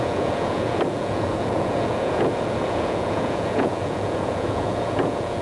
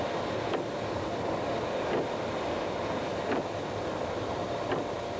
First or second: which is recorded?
second